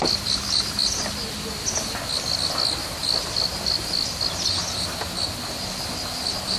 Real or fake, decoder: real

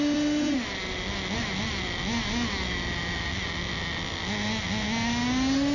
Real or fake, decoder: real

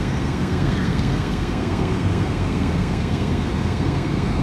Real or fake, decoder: fake, codec, SNAC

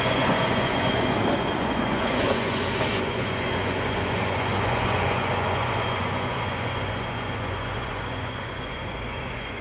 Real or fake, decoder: fake, vocoder, Vocos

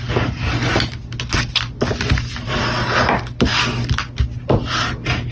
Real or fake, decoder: real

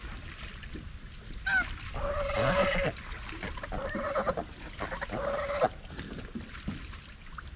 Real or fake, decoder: real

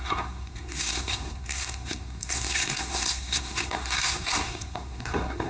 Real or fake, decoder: fake, codec, SNAC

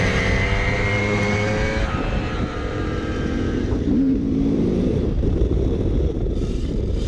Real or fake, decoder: fake, vocoder, BigVGAN v2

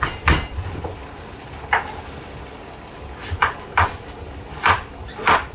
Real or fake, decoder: real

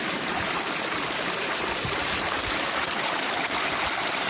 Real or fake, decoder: fake, vocoder, BigVGAN v2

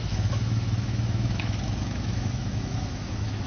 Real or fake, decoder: fake, autoencoder, DAC-VAE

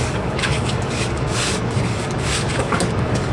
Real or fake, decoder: fake, codec, DAC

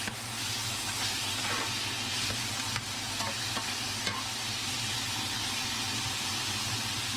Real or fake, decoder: real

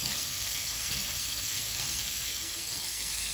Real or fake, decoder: fake, codec, SNAC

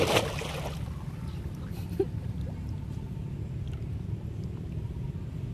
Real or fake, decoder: real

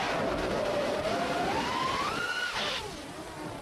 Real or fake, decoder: real